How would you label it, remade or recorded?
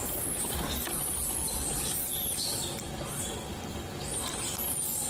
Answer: recorded